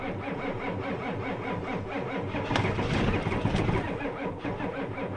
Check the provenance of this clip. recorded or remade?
recorded